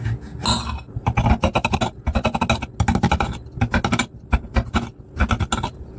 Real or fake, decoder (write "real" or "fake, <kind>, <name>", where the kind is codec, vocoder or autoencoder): real